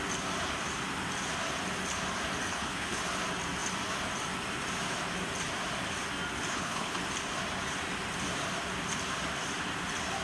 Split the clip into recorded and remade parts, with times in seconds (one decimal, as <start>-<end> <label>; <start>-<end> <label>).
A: 0.0-2.5 recorded; 2.5-3.0 remade; 3.0-6.5 recorded; 6.5-7.0 remade; 7.0-10.2 recorded